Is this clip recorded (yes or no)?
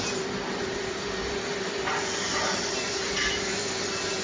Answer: yes